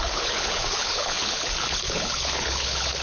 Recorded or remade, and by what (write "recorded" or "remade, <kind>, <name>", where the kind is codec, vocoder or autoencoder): remade, codec, HILCodec